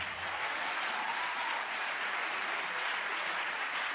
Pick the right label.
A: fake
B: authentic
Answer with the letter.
A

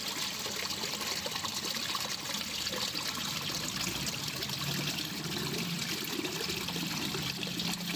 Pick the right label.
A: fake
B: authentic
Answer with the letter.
B